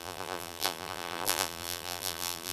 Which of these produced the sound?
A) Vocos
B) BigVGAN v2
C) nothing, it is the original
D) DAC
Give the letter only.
B